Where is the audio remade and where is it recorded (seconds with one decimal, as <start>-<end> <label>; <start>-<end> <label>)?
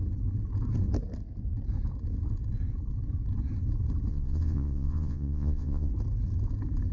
0.0-4.1 recorded; 4.1-5.9 remade; 5.9-6.9 recorded